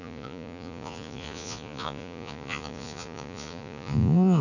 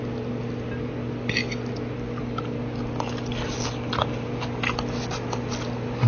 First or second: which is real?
second